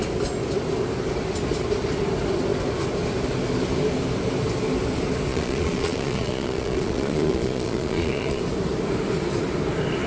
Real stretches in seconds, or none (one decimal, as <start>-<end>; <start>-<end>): 0.0-5.3; 8.4-10.1